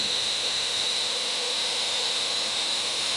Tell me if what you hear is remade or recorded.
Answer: remade